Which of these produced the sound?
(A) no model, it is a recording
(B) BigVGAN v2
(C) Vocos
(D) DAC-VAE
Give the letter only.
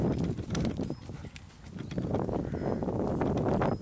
A